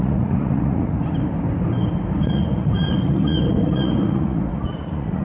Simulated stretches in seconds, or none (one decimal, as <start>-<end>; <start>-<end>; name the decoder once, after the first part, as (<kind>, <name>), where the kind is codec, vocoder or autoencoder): 0.0-1.0 (vocoder, Vocos); 2.2-5.2